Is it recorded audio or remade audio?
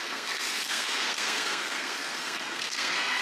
remade